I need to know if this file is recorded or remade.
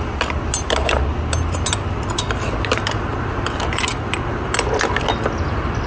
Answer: recorded